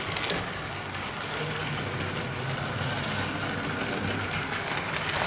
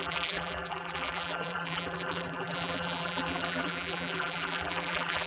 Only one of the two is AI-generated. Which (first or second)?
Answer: second